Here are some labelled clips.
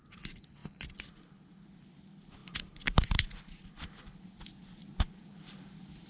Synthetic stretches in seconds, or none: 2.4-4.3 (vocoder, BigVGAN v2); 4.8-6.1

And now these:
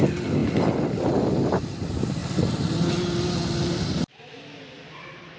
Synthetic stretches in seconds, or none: none